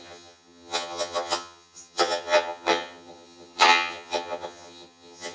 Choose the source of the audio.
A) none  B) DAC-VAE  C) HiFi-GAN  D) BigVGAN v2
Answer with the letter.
C